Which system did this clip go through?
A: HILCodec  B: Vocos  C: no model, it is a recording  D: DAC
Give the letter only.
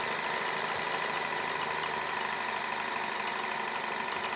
C